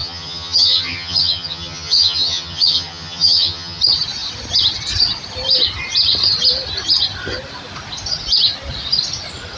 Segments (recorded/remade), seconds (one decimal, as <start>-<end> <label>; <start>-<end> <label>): 0.0-3.8 remade; 3.8-9.6 recorded